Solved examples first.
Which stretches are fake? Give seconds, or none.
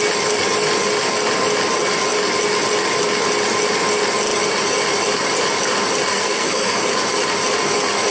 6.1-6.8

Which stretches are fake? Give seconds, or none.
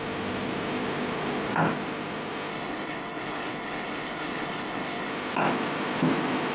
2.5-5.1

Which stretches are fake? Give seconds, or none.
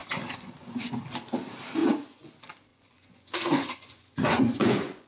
0.0-0.9; 1.8-2.3; 2.7-5.1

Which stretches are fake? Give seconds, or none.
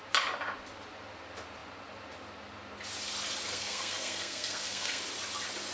3.5-5.0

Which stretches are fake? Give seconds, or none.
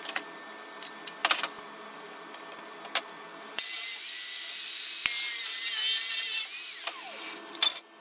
none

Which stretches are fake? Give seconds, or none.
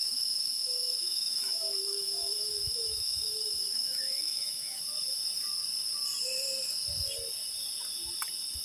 0.0-4.8